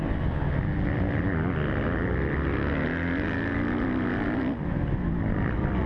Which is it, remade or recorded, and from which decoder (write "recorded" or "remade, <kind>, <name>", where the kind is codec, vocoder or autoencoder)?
recorded